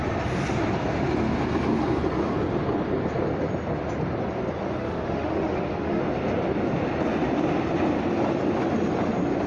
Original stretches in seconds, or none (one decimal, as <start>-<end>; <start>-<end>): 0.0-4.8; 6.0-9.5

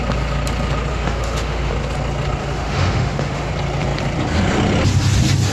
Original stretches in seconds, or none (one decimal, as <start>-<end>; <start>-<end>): 0.0-0.9; 1.7-2.4; 3.5-5.5

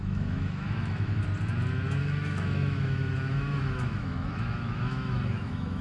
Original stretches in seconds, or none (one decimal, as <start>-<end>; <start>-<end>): 1.2-2.0

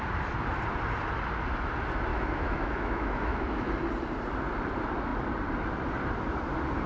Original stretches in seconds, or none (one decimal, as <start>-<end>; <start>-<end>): 0.0-2.1; 3.7-6.9

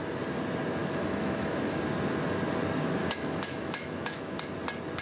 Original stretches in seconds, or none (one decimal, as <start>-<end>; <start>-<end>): 0.0-0.8; 1.8-3.0; 4.4-5.0